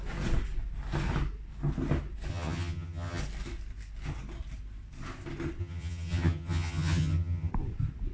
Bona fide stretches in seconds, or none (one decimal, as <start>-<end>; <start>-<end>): 0.0-2.3; 3.2-5.6; 7.5-8.1